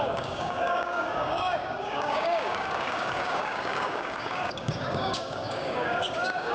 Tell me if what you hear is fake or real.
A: fake